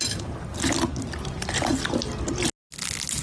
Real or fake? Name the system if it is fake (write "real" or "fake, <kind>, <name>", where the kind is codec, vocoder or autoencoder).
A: real